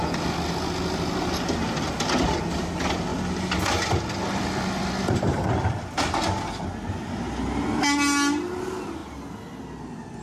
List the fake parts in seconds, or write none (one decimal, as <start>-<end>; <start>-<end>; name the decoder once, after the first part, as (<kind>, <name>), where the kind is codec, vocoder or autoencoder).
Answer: 3.1-6.0 (vocoder, BigVGAN v2)